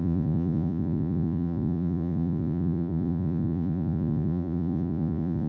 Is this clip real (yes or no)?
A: no